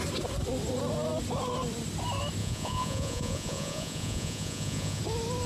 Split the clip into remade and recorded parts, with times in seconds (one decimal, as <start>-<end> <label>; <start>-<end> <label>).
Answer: 0.0-2.4 recorded; 2.4-5.0 remade; 5.0-5.5 recorded